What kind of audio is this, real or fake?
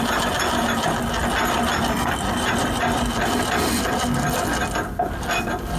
real